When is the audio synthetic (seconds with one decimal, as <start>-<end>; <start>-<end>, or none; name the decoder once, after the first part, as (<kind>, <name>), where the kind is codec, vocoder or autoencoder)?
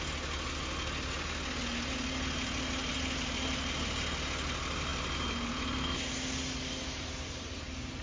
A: none